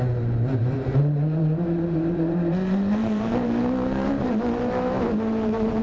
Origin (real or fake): fake